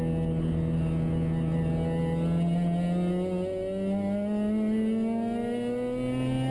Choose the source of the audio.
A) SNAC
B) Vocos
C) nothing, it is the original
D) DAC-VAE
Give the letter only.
C